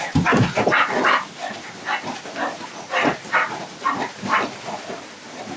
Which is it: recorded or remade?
recorded